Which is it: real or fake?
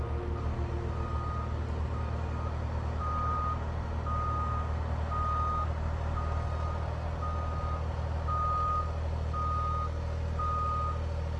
real